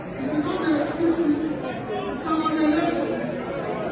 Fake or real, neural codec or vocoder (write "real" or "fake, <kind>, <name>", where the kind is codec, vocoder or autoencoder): real